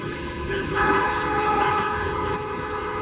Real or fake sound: fake